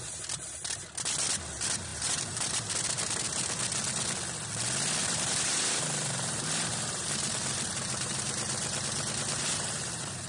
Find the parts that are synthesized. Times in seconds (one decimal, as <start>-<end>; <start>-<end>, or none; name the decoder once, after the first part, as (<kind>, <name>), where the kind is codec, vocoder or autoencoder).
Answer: 1.9-2.5 (vocoder, BigVGAN v2); 5.0-10.3